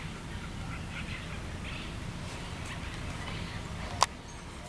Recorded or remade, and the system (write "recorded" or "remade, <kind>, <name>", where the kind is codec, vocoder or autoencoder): recorded